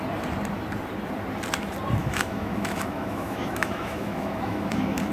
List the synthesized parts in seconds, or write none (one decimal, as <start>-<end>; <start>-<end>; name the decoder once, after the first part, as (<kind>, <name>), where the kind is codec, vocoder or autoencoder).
2.0-5.1 (autoencoder, DAC-VAE)

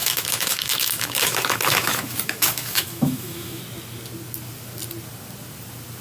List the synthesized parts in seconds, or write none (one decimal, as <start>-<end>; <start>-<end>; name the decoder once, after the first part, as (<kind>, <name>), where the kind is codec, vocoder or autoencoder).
0.0-3.6 (autoencoder, DAC-VAE)

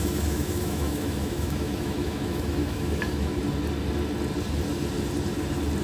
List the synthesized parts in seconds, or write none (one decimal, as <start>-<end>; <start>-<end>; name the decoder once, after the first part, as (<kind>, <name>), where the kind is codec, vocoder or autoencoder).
0.0-3.4 (autoencoder, DAC-VAE)

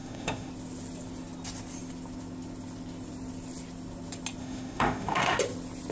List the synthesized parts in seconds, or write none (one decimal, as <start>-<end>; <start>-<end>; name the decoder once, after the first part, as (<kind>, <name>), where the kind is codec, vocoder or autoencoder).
0.0-0.5 (autoencoder, DAC-VAE); 4.4-5.4

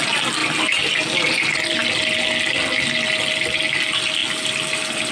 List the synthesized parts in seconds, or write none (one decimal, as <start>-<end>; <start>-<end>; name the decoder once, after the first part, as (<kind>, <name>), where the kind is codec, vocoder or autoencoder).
none